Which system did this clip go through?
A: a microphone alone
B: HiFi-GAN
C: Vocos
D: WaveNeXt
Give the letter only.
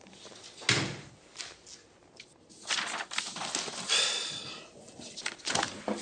A